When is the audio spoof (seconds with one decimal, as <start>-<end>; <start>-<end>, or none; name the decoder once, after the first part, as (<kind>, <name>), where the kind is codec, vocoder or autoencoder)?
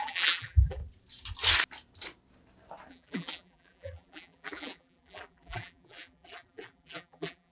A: 0.0-0.8 (vocoder, BigVGAN v2); 2.9-7.5